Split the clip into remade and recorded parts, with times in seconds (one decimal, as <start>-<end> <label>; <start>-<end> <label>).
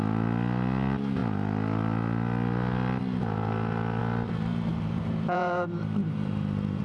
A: 0.0-4.7 recorded; 4.7-6.8 remade